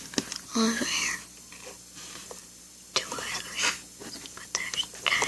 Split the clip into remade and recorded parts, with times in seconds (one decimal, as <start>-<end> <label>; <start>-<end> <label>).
0.0-5.3 recorded